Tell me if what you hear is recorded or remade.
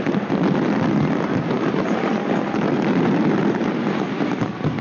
recorded